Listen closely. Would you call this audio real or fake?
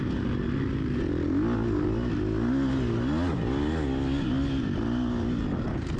real